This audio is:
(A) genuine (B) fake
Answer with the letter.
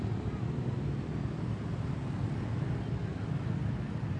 A